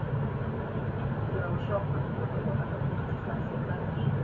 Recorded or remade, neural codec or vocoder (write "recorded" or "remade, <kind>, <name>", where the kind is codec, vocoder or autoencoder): recorded